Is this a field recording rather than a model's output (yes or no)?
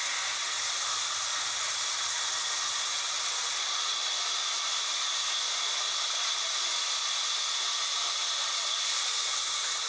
yes